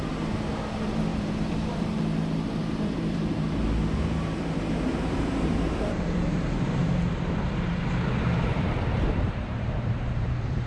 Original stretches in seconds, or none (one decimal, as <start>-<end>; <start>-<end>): 0.0-1.1; 2.0-2.6; 3.6-4.9; 6.9-8.5